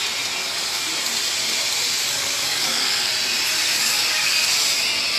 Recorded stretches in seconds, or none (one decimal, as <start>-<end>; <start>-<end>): 0.0-0.4; 0.9-2.0; 3.1-3.8; 4.4-5.2